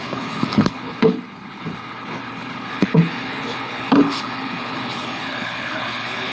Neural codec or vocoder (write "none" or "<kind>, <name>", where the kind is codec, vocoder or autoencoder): codec, HILCodec